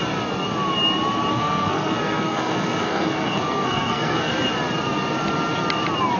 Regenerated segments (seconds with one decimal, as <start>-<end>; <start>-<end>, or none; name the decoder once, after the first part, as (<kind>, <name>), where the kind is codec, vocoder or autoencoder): 1.3-4.3 (codec, SNAC)